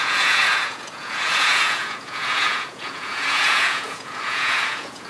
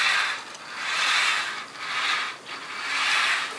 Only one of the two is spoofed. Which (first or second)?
first